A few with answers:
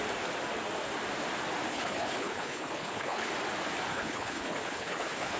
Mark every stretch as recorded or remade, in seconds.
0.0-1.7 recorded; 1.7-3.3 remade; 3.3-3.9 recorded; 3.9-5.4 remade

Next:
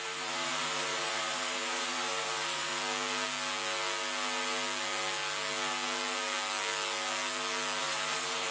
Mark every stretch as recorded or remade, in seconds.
0.0-2.7 remade; 2.7-7.8 recorded; 7.8-8.5 remade

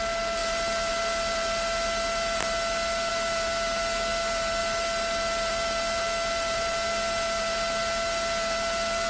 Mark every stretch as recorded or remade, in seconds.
0.0-9.1 recorded

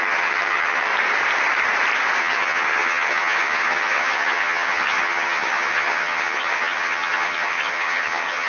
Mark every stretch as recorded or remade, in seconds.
0.0-0.9 remade; 0.9-2.2 recorded; 2.2-8.5 remade